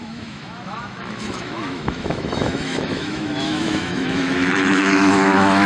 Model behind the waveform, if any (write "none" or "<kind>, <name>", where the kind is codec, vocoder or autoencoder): autoencoder, DAC-VAE